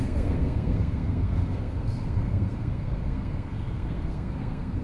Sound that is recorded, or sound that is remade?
remade